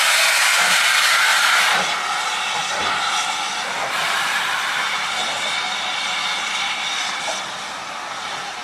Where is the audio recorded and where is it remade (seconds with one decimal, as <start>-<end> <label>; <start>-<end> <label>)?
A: 0.0-8.6 recorded